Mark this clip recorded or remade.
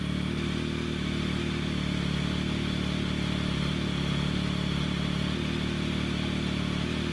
recorded